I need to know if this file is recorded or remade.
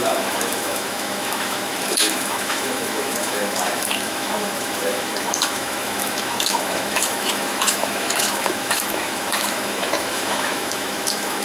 remade